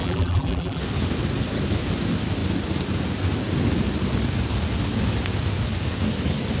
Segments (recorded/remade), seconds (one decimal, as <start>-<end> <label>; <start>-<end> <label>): 0.0-0.8 remade; 0.8-6.6 recorded